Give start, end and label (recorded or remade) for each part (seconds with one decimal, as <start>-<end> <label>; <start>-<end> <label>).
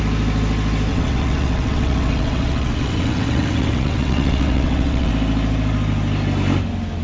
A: 0.0-0.9 recorded; 0.9-5.1 remade; 5.1-7.0 recorded